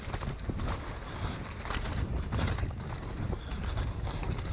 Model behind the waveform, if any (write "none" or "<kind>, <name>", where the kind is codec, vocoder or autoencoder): none